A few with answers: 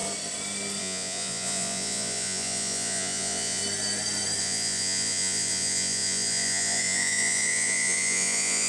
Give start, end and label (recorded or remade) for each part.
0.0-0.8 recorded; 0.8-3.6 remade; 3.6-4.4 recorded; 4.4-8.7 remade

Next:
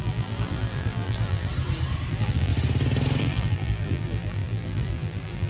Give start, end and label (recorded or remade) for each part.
0.0-1.5 remade; 1.5-2.1 recorded; 2.1-2.5 remade; 2.5-3.2 recorded; 3.2-5.5 remade

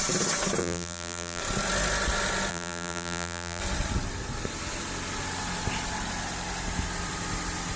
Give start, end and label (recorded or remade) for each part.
0.0-0.6 recorded; 0.6-1.4 remade; 1.4-2.5 recorded; 2.5-3.6 remade; 3.6-7.8 recorded